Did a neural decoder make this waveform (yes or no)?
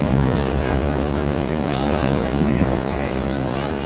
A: yes